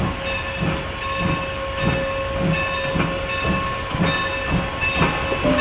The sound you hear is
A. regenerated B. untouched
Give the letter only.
B